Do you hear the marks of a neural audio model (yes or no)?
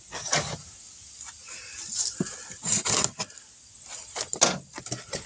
no